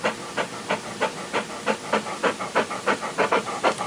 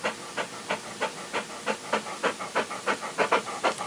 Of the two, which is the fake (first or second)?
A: first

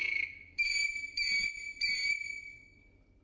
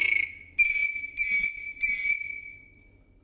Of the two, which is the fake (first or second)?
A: first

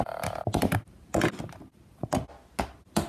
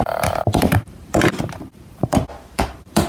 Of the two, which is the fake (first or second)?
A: second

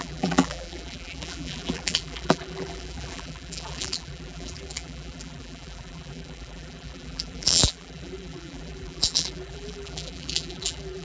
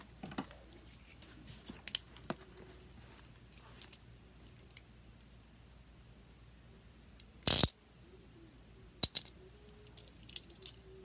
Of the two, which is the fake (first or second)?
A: first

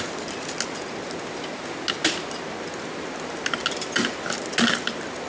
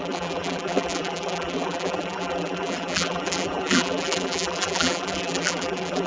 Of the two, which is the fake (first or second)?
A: second